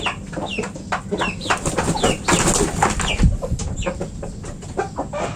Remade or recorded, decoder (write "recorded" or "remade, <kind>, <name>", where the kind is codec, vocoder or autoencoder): recorded